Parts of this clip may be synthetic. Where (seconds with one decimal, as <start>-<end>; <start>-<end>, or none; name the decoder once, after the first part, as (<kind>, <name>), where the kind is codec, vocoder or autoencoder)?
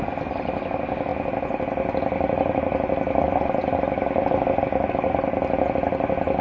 none